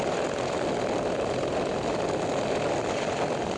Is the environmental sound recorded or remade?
recorded